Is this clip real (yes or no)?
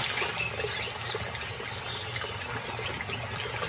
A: yes